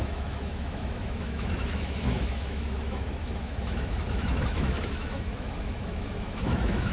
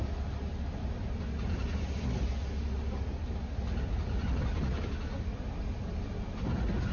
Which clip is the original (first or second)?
second